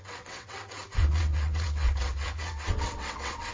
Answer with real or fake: fake